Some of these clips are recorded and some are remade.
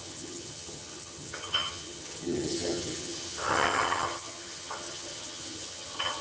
remade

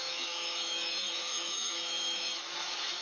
remade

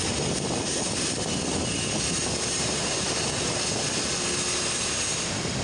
recorded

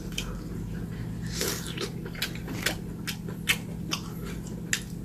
recorded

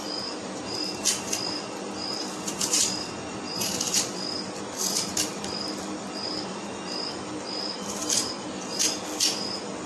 recorded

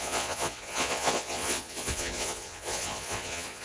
remade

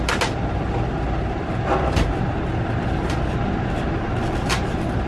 recorded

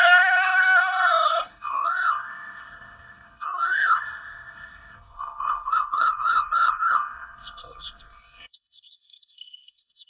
remade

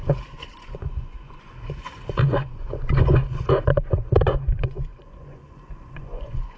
remade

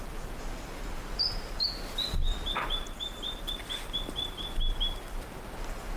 remade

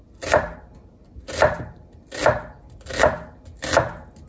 recorded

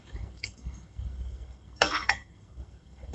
remade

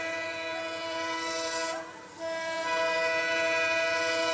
remade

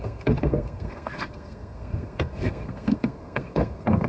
remade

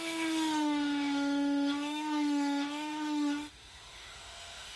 remade